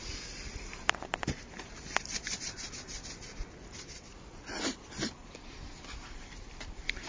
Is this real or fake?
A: real